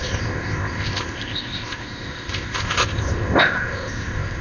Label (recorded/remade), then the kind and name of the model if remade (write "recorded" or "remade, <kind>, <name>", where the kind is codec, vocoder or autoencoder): remade, codec, ZipCodec